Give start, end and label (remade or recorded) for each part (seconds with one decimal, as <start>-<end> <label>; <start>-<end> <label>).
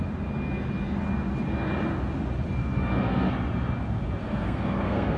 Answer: 0.0-2.6 recorded; 2.6-3.3 remade; 3.3-4.2 recorded; 4.2-5.2 remade